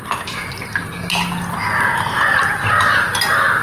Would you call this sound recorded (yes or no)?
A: yes